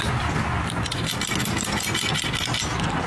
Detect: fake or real real